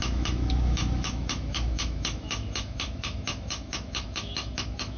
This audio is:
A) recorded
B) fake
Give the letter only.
B